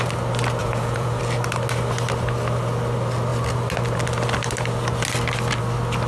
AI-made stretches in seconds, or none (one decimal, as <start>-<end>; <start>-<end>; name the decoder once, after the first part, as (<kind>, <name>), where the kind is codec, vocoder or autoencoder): 0.6-1.2 (vocoder, Vocos)